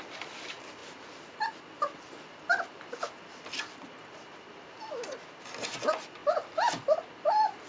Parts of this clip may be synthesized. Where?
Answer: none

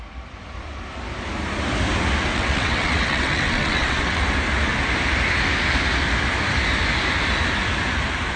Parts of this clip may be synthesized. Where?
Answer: 2.3-4.2 (vocoder, WaveNeXt)

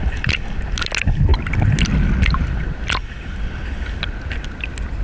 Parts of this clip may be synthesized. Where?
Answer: none